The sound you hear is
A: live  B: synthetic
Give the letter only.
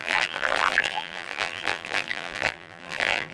B